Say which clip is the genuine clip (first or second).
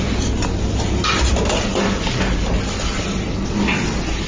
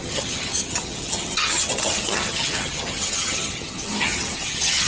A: first